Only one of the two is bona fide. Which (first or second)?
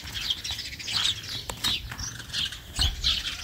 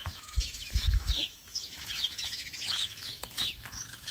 first